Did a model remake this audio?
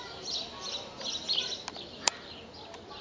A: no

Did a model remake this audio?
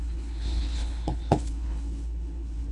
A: yes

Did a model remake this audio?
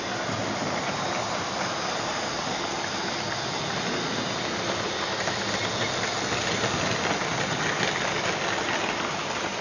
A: no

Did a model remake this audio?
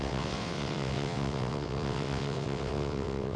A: yes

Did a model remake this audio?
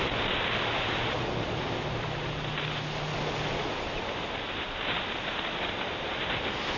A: no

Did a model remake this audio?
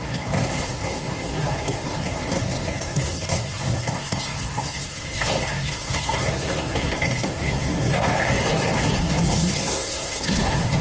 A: yes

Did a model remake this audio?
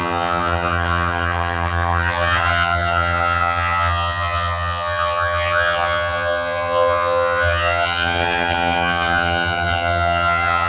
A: yes